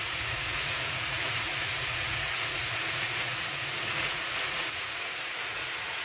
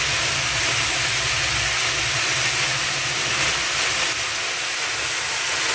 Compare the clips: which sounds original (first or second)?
second